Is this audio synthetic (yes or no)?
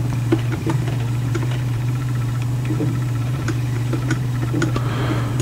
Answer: yes